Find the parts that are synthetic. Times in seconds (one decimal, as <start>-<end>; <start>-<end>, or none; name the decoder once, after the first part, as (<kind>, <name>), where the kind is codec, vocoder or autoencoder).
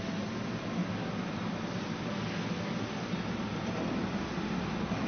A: none